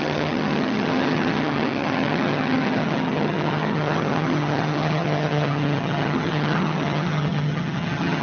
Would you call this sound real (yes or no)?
no